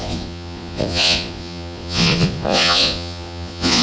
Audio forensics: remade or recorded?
remade